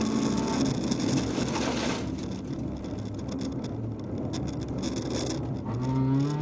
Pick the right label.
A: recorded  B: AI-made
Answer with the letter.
A